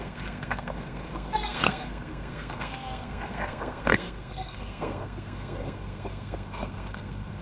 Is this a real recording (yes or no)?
no